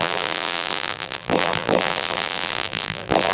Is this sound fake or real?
fake